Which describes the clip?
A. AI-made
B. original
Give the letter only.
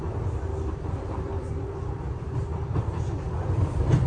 A